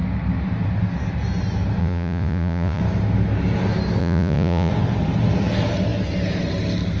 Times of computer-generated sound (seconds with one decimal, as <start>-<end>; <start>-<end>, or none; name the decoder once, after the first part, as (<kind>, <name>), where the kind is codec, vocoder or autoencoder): 1.8-2.8 (vocoder, Vocos); 4.0-4.7